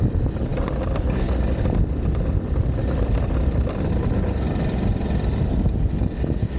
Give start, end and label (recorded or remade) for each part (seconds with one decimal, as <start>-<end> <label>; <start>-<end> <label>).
0.0-6.6 recorded